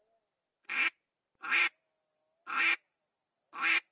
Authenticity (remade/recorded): recorded